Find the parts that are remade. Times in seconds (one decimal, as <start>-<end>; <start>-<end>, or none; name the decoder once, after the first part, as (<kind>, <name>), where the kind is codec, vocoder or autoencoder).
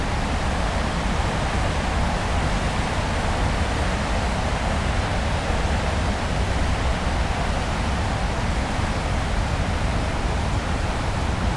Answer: none